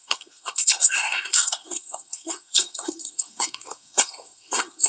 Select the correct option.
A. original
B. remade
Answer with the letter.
B